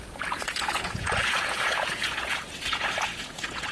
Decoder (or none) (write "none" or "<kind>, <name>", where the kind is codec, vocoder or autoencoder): vocoder, Vocos